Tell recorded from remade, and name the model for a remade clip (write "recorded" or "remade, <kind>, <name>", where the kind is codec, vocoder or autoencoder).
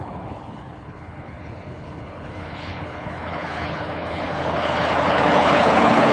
remade, codec, HILCodec